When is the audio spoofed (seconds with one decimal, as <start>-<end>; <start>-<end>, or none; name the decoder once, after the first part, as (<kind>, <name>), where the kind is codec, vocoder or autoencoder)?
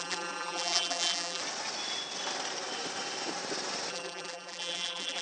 0.0-1.4 (vocoder, BigVGAN v2); 3.9-5.2